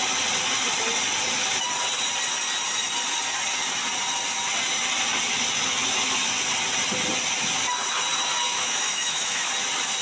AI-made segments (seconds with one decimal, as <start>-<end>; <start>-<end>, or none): 8.5-9.5